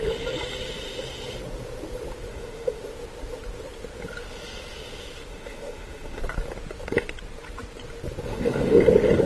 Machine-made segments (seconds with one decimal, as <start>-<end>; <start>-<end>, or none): 2.3-2.8; 5.3-6.2; 8.3-8.8